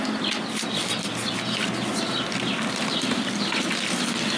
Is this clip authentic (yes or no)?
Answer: yes